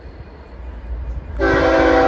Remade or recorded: recorded